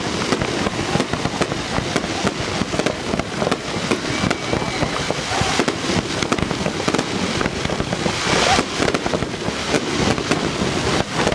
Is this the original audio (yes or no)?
yes